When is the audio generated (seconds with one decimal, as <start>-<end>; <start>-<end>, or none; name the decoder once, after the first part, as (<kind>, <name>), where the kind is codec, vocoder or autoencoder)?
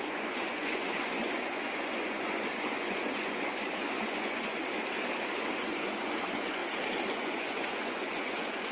0.0-4.5 (vocoder, Vocos); 5.5-6.6; 7.1-8.7